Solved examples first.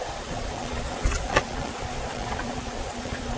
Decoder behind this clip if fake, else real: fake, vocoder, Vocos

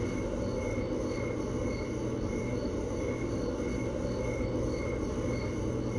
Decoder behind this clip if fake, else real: real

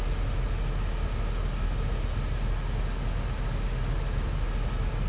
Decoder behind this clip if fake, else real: real